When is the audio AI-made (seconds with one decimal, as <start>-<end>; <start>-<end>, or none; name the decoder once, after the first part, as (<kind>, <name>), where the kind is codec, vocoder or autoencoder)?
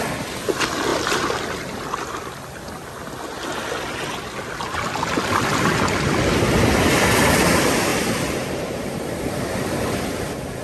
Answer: 7.9-10.0 (vocoder, BigVGAN v2)